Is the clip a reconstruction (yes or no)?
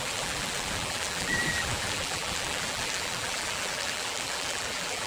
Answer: yes